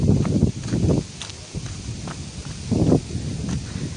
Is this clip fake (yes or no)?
no